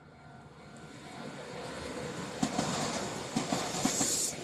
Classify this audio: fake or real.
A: fake